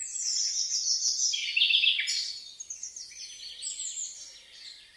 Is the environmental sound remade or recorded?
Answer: recorded